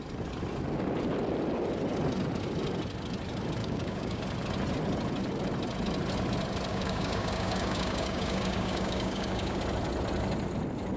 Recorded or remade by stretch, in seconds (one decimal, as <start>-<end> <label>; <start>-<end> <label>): 0.0-3.6 recorded; 3.6-4.2 remade; 4.2-6.7 recorded; 6.7-9.6 remade; 9.6-11.0 recorded